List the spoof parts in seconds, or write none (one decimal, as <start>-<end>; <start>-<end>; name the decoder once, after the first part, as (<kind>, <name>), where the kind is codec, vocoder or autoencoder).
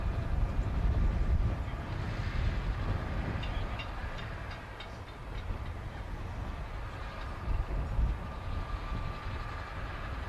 none